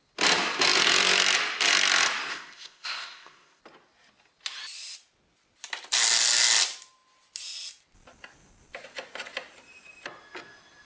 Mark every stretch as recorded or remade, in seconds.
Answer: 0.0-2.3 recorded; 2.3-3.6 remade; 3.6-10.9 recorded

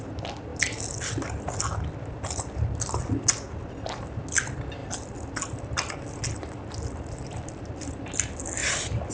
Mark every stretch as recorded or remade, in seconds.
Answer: 0.0-9.1 recorded

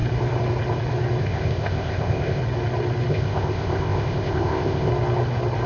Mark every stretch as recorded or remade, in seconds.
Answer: 0.0-1.2 recorded; 1.2-2.4 remade; 2.4-3.1 recorded; 3.1-4.9 remade; 4.9-5.7 recorded

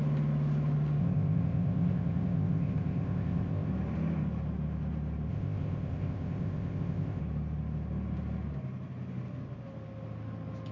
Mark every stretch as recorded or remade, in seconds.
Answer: 0.0-1.0 recorded; 1.0-3.7 remade; 3.7-5.3 recorded; 5.3-7.2 remade; 7.2-10.7 recorded